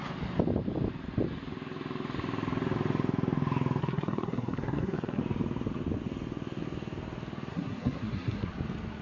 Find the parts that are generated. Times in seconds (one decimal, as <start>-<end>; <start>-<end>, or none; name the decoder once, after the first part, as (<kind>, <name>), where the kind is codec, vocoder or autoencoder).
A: 3.8-5.2 (codec, SNAC); 7.5-8.5